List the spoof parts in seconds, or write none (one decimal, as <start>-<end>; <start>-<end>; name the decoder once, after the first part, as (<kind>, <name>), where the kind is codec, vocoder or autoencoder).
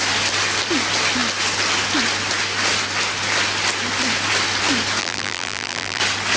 5.0-6.0 (vocoder, BigVGAN v2)